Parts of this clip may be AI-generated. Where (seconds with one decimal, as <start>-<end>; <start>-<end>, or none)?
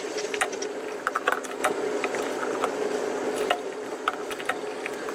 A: none